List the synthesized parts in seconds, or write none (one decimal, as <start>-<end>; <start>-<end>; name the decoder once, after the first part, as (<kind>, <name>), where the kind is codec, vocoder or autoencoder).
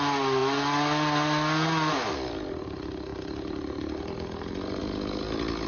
none